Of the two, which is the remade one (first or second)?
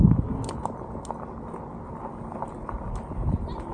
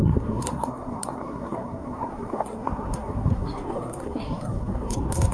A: second